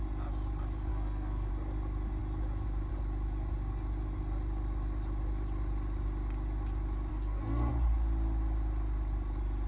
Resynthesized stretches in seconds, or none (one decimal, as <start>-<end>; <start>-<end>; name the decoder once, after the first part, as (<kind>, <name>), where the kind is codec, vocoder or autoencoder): 0.9-1.5 (codec, SNAC); 7.1-7.7